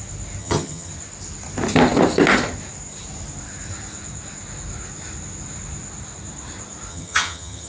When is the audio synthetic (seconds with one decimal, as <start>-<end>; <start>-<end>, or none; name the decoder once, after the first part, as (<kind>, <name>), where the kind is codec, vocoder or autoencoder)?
0.4-0.9 (vocoder, HiFi-GAN); 6.9-7.7